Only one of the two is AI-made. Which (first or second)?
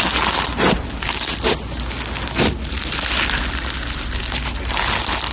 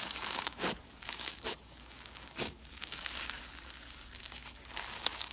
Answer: second